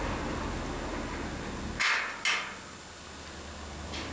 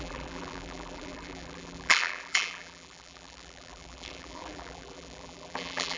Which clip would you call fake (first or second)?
second